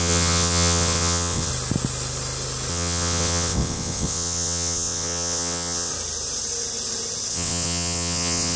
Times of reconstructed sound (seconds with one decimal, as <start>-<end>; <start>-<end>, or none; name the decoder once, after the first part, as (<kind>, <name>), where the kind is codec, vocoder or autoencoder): 0.0-1.5 (vocoder, WaveNeXt); 2.7-5.9; 7.3-8.6